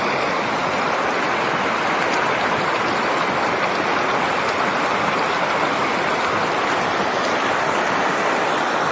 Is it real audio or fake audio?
real